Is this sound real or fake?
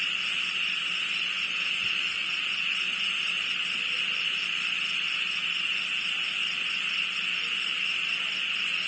real